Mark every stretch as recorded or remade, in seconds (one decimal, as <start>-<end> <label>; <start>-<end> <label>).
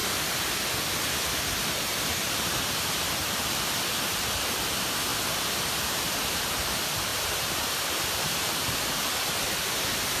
0.0-7.1 recorded; 7.1-8.8 remade; 8.8-10.2 recorded